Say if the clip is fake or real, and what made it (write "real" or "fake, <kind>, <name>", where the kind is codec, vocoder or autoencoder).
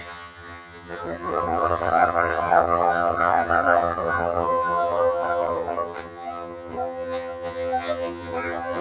fake, vocoder, HiFi-GAN